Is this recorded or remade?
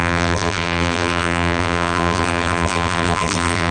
remade